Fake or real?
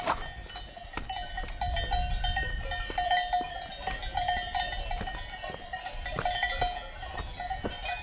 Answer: real